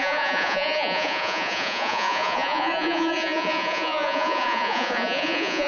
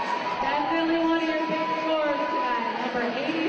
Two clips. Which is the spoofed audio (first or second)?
first